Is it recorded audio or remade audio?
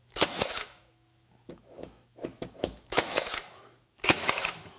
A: remade